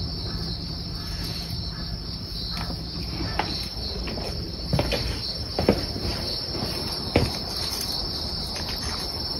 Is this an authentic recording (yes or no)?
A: yes